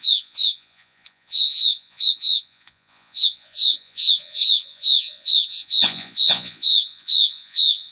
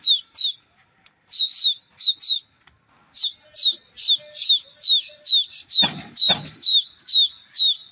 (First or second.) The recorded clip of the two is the second